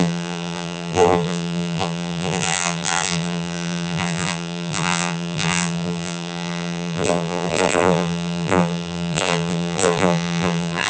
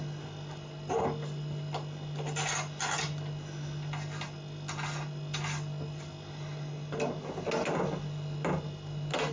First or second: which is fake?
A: first